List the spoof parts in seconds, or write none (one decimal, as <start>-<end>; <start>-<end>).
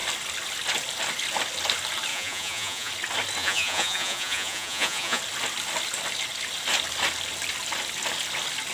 2.1-2.9; 3.4-5.2